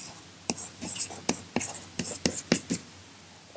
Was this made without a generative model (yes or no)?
yes